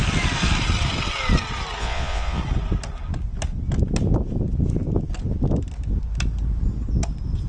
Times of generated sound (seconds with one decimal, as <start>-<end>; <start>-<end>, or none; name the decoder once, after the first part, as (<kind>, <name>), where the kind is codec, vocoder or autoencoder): 1.8-2.4 (vocoder, Vocos)